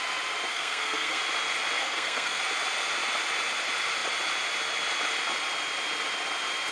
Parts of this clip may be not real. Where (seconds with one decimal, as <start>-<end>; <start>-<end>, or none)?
0.5-1.2; 1.8-2.4